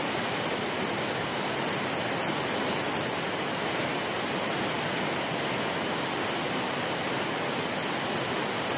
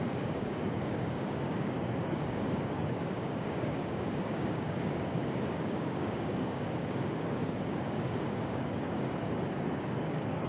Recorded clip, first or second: first